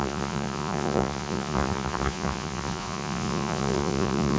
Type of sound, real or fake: fake